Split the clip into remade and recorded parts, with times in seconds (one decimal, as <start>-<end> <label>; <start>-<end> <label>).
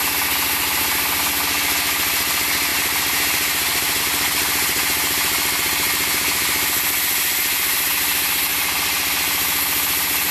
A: 0.0-2.7 recorded; 2.7-4.0 remade; 4.0-8.5 recorded; 8.5-10.3 remade